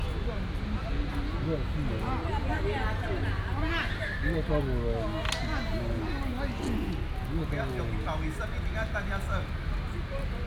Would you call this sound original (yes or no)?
yes